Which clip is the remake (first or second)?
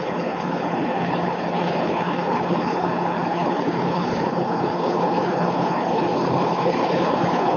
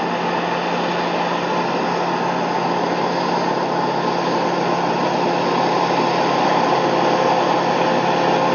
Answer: first